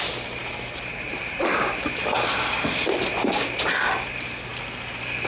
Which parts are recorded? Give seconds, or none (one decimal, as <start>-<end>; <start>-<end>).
0.0-5.3